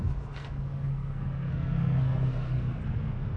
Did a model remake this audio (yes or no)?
yes